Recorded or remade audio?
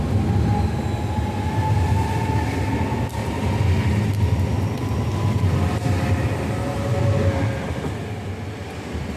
recorded